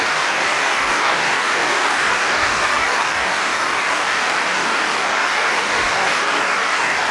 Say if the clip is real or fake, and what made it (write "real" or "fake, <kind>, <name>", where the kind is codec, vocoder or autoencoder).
fake, codec, DAC